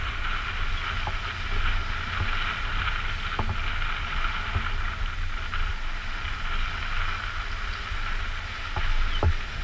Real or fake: real